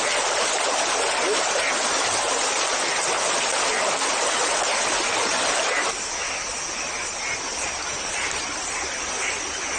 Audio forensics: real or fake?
real